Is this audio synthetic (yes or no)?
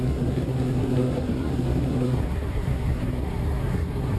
yes